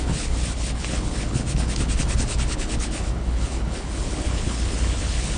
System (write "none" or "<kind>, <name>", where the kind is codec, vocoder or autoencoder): codec, HILCodec